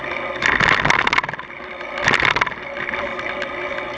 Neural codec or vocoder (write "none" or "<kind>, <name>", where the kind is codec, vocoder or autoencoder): none